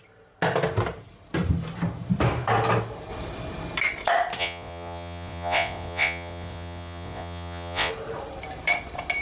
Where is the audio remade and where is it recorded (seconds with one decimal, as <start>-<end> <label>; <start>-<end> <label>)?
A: 0.0-4.4 recorded; 4.4-7.9 remade; 7.9-9.2 recorded